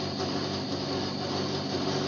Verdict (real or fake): real